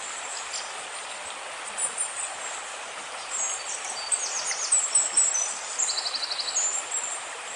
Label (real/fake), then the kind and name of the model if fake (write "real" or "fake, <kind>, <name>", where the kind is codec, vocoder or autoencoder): real